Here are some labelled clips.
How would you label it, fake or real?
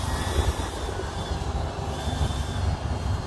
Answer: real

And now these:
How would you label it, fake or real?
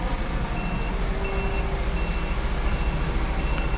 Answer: real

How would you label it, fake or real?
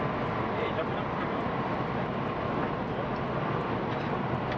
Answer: real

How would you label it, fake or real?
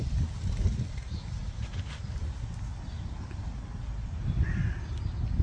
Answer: real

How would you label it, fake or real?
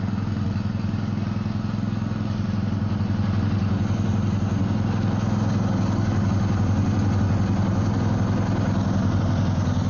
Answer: real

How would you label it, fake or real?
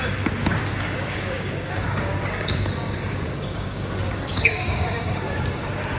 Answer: fake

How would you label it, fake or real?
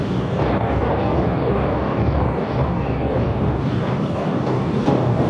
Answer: fake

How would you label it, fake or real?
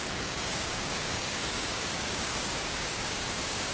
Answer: fake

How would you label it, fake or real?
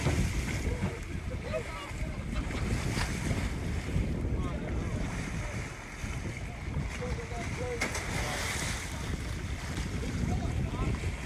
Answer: real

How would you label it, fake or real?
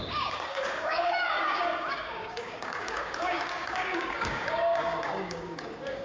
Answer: fake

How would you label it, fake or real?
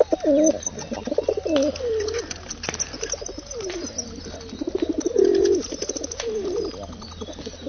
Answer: real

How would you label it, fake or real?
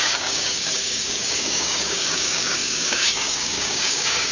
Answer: fake